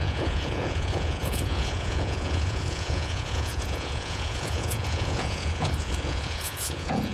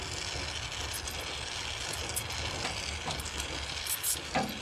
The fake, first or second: first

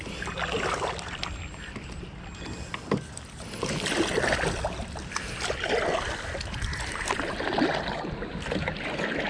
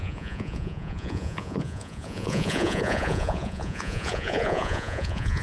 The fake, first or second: second